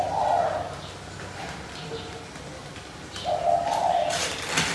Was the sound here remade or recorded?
recorded